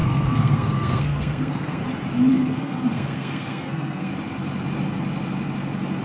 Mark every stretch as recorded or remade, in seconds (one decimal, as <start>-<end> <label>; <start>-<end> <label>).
0.0-1.8 remade; 1.8-2.3 recorded; 2.3-4.1 remade; 4.1-6.0 recorded